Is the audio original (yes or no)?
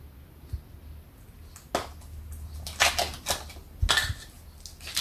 yes